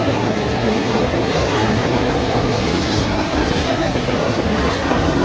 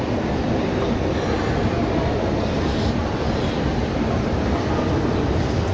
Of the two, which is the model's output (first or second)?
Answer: first